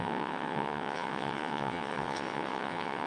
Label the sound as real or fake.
fake